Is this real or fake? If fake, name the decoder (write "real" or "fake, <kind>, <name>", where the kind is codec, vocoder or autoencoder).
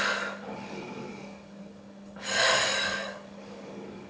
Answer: fake, codec, DAC